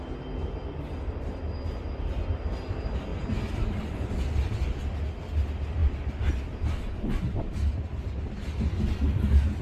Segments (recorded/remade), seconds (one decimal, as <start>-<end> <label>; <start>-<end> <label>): 0.0-9.6 recorded